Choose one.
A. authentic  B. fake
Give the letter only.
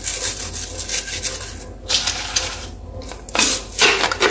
A